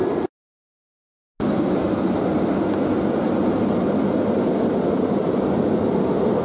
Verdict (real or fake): real